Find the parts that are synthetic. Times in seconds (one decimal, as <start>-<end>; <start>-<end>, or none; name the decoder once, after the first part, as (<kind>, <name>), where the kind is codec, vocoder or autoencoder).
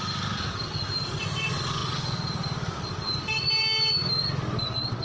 none